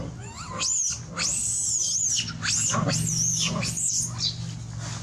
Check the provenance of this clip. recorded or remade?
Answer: recorded